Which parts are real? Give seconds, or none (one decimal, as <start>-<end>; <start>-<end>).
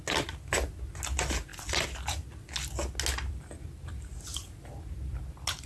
0.0-5.7